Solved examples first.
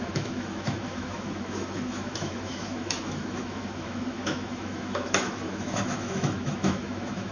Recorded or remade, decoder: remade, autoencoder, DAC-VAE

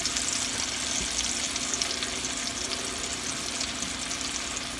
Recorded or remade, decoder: recorded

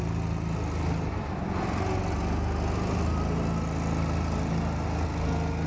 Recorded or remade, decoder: recorded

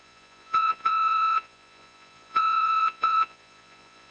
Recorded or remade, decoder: remade, vocoder, Vocos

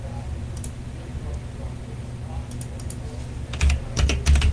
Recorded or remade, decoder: recorded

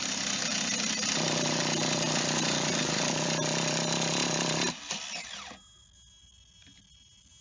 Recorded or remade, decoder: recorded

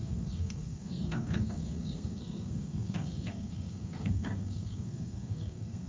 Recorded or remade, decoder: remade, codec, SNAC